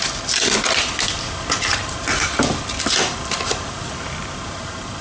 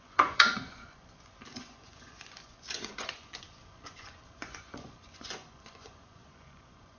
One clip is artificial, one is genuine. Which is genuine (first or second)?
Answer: first